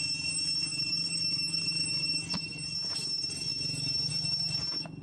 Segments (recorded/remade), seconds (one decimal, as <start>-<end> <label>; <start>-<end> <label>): 0.0-0.7 recorded; 0.7-2.3 remade; 2.3-5.0 recorded